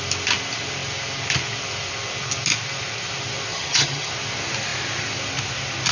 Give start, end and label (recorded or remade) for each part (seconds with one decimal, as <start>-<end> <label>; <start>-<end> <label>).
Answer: 0.0-3.5 recorded; 3.5-4.1 remade; 4.1-5.9 recorded